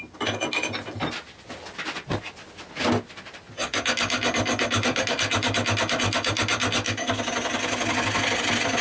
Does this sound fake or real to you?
real